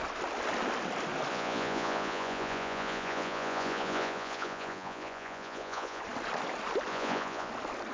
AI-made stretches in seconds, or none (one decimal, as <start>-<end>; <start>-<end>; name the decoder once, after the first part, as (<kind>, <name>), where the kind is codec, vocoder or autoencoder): 1.3-6.0 (vocoder, Vocos); 6.9-7.5